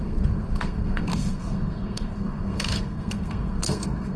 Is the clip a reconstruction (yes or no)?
yes